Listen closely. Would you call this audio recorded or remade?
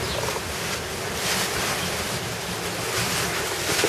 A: recorded